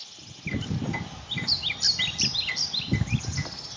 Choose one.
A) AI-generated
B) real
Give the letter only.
B